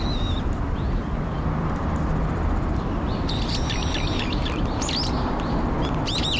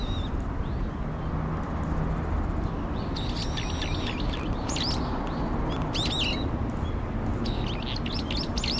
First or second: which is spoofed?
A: first